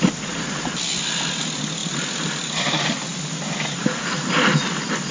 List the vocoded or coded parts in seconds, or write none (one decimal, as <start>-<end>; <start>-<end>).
none